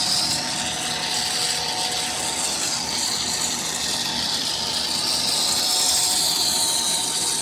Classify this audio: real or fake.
real